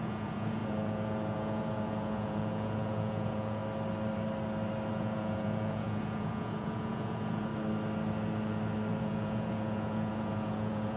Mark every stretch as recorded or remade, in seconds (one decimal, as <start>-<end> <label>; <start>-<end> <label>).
0.0-3.6 remade; 3.6-4.9 recorded; 4.9-7.5 remade; 7.5-8.9 recorded; 8.9-11.0 remade